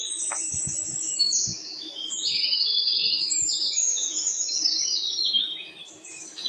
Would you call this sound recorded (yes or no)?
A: no